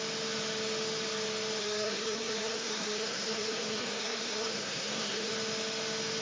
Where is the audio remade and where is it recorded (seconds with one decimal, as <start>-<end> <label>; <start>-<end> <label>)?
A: 0.0-1.6 recorded; 1.6-5.3 remade; 5.3-6.2 recorded